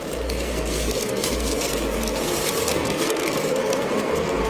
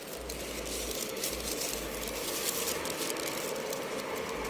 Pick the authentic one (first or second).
second